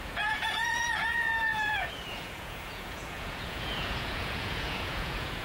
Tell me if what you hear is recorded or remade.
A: remade